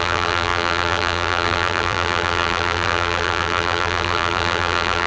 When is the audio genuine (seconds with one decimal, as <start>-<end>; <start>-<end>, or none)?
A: none